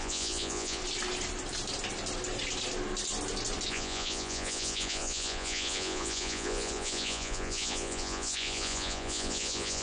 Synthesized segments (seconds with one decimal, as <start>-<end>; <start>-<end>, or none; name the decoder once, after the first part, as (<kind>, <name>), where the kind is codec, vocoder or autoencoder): 0.0-0.8 (vocoder, Vocos); 3.7-9.8